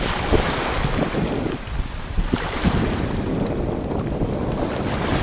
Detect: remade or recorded recorded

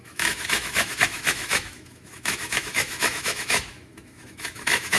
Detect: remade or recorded remade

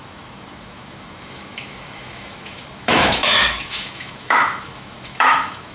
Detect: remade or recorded remade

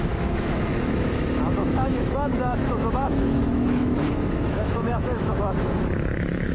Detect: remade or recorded remade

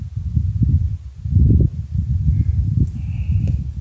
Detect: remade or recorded recorded